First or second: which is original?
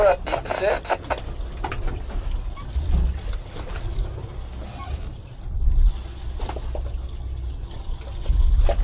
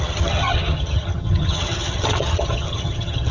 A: first